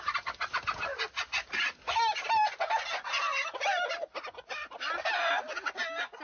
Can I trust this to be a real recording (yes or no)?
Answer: yes